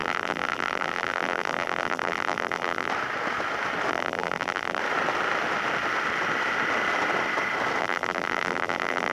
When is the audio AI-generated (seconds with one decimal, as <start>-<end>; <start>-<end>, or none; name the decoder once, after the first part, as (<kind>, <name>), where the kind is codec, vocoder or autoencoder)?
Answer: 0.0-2.9 (vocoder, BigVGAN v2); 3.9-4.8; 7.8-9.1